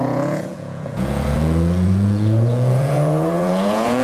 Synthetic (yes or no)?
yes